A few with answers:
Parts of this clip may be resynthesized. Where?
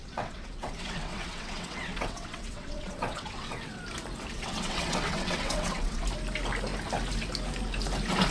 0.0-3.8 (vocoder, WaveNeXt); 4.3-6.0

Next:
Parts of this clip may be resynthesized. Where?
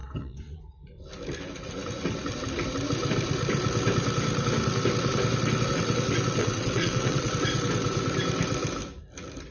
0.0-0.6 (vocoder, WaveNeXt); 6.4-7.3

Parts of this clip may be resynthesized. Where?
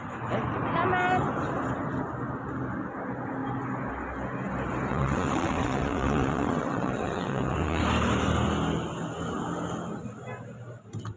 4.9-7.8 (vocoder, WaveNeXt)